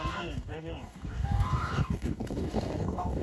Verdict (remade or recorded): remade